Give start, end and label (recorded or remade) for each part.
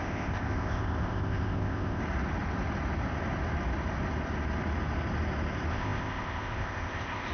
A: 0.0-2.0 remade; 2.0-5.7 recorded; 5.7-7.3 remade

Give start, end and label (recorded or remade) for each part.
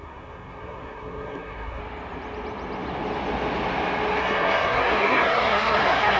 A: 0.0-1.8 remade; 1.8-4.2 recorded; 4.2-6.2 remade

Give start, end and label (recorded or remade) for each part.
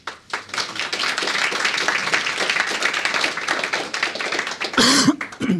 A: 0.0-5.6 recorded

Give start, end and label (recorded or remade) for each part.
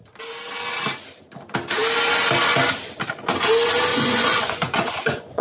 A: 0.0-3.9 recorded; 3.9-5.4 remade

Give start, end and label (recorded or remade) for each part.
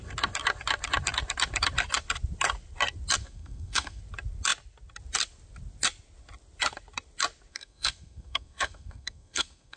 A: 0.0-3.2 recorded; 3.2-4.0 remade; 4.0-7.5 recorded; 7.5-9.8 remade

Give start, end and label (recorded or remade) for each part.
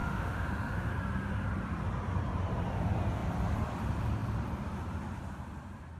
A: 0.0-0.9 remade; 0.9-6.0 recorded